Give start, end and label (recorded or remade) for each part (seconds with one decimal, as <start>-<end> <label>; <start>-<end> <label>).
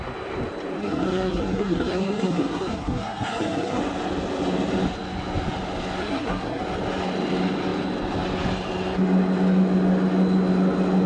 0.0-0.8 recorded; 0.8-3.8 remade; 3.8-6.0 recorded; 6.0-6.6 remade; 6.6-11.1 recorded